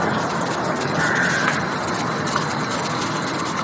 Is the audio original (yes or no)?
no